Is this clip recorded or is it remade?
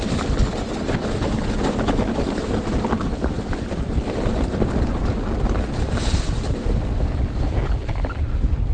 recorded